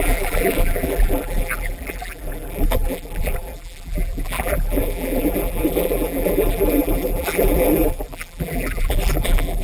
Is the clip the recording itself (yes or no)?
no